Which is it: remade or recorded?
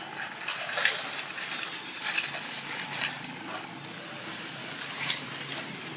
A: recorded